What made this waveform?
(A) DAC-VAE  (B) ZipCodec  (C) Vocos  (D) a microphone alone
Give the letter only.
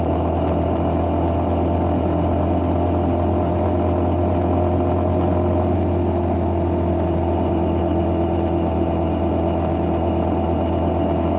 D